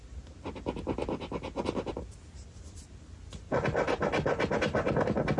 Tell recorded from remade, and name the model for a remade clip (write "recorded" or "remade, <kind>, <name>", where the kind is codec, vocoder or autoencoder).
recorded